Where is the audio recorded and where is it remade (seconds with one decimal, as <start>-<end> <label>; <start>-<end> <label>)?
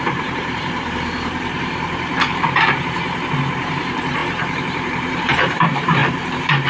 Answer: 0.0-6.7 remade